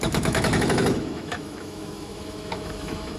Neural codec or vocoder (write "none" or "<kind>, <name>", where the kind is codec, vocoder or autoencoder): autoencoder, DAC-VAE